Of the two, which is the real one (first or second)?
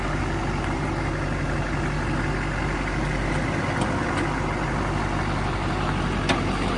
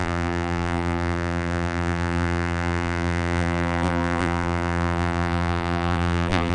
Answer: first